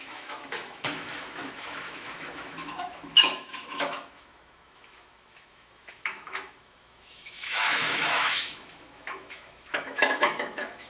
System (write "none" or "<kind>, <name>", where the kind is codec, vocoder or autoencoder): autoencoder, DAC-VAE